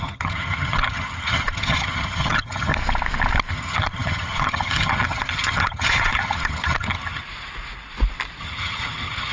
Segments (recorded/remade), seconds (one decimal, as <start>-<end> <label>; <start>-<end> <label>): 0.0-2.7 remade; 2.7-3.5 recorded; 3.5-7.2 remade; 7.2-8.4 recorded; 8.4-9.3 remade